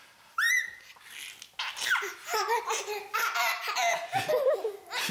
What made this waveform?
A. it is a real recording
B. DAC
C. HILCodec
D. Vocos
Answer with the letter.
A